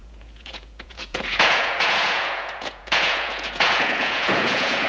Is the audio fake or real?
fake